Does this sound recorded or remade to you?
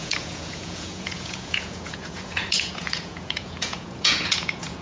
remade